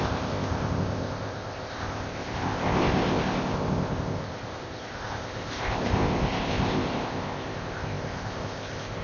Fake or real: fake